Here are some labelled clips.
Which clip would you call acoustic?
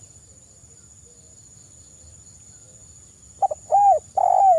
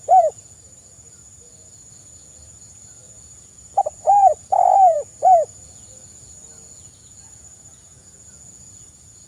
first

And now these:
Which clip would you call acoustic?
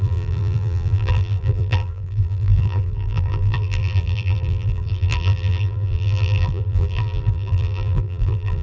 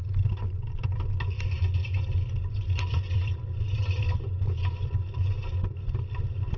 second